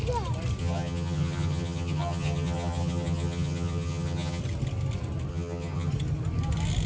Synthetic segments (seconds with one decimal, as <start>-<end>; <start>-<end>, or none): 0.6-4.4; 5.3-5.9